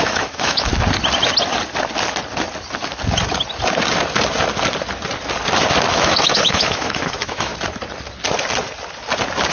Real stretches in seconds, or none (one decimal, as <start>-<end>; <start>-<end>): 0.7-5.9; 7.5-9.5